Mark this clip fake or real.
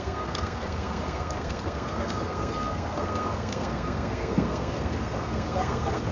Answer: fake